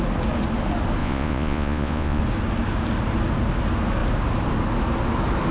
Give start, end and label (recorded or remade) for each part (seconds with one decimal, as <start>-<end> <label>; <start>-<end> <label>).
0.0-1.0 recorded; 1.0-2.2 remade; 2.2-5.5 recorded